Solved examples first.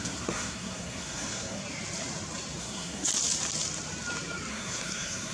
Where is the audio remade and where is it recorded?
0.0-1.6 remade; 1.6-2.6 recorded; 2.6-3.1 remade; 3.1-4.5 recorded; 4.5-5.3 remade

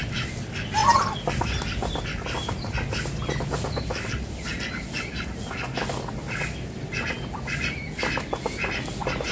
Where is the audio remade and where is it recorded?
0.0-9.3 recorded

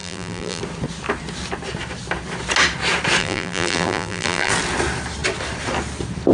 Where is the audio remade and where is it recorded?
0.0-0.6 remade; 0.6-3.2 recorded; 3.2-4.5 remade; 4.5-6.3 recorded

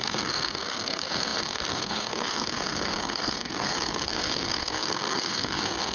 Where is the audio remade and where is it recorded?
0.0-5.9 remade

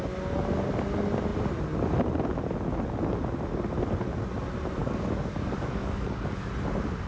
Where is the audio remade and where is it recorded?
0.0-4.8 recorded; 4.8-6.5 remade; 6.5-7.1 recorded